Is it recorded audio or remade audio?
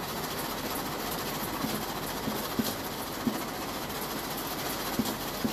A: recorded